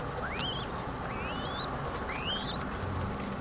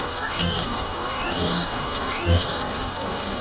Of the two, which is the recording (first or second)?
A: first